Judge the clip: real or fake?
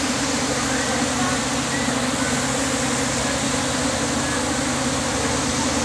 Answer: real